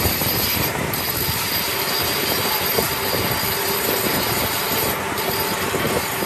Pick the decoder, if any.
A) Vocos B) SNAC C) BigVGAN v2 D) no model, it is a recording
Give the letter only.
C